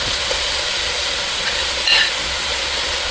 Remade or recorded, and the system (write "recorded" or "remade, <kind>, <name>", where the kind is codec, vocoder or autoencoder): remade, vocoder, Vocos